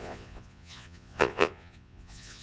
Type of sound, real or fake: fake